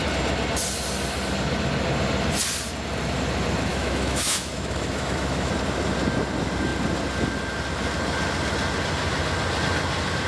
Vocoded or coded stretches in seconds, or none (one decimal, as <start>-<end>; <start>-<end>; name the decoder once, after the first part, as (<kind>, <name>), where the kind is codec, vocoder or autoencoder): 3.7-5.5 (autoencoder, DAC-VAE)